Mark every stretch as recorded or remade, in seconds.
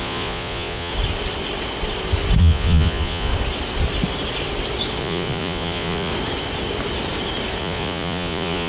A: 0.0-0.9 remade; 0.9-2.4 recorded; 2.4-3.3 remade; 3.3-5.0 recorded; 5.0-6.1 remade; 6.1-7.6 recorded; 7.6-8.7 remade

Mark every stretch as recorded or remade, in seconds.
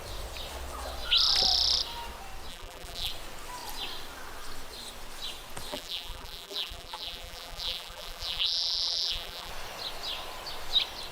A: 0.0-2.5 recorded; 2.5-3.1 remade; 3.1-5.7 recorded; 5.7-9.5 remade; 9.5-11.1 recorded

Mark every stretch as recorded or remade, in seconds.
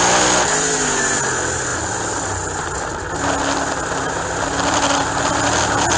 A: 0.0-6.0 recorded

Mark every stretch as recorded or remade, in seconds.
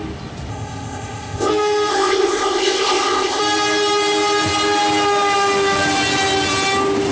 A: 0.0-0.5 recorded; 0.5-1.5 remade; 1.5-1.9 recorded; 1.9-3.4 remade; 3.4-7.1 recorded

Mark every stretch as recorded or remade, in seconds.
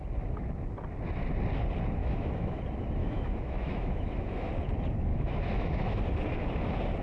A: 0.0-2.0 recorded; 2.0-2.6 remade; 2.6-3.0 recorded; 3.0-4.5 remade; 4.5-5.1 recorded; 5.1-6.0 remade; 6.0-7.0 recorded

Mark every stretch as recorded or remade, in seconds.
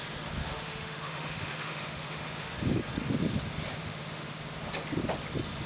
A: 0.0-0.4 recorded; 0.4-2.5 remade; 2.5-3.8 recorded; 3.8-4.4 remade; 4.4-5.7 recorded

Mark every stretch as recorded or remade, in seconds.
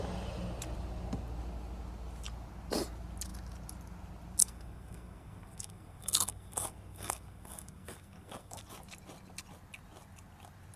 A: 0.0-4.4 recorded; 4.4-8.6 remade; 8.6-10.8 recorded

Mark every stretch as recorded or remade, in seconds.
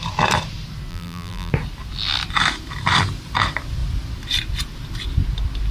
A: 0.0-0.9 recorded; 0.9-1.5 remade; 1.5-5.7 recorded